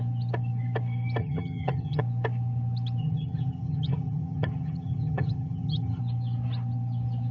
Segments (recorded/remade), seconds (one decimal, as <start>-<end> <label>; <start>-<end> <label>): 0.0-1.2 recorded; 1.2-2.0 remade; 2.0-3.0 recorded; 3.0-6.0 remade; 6.0-7.3 recorded